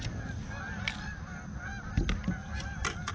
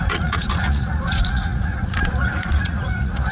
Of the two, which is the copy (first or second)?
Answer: second